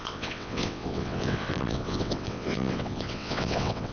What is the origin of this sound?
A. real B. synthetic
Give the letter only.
B